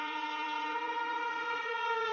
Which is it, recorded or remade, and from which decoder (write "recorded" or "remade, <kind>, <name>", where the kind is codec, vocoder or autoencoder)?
remade, vocoder, Vocos